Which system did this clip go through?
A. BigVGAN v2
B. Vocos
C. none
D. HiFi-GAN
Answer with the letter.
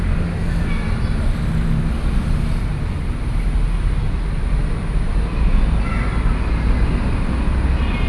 C